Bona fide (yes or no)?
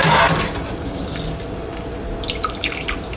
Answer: yes